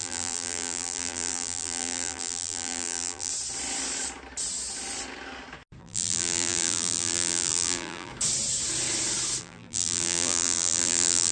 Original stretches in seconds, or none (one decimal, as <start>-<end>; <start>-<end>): 3.3-5.8; 8.1-9.4